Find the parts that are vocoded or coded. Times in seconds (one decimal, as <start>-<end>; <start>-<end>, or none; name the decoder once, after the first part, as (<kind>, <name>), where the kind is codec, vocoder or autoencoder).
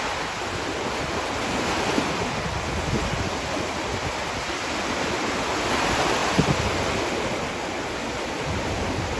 none